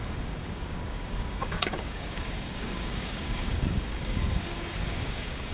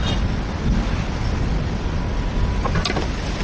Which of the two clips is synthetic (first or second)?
first